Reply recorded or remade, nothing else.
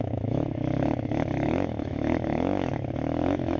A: remade